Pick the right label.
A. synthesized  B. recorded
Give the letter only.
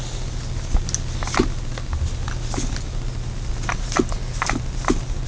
B